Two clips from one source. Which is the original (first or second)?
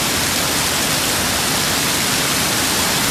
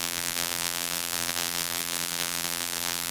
first